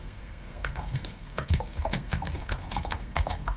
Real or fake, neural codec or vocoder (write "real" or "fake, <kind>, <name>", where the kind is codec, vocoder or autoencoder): fake, codec, SNAC